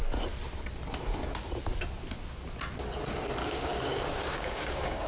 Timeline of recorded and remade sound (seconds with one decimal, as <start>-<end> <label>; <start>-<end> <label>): 0.0-3.4 recorded; 3.4-5.1 remade